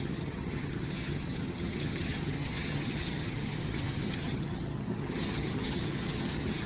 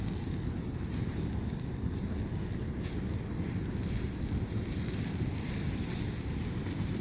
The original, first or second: second